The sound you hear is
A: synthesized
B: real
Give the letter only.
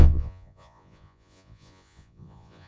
A